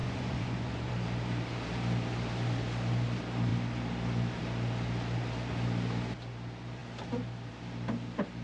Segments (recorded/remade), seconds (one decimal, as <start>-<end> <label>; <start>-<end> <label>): 0.0-0.9 remade; 0.9-8.4 recorded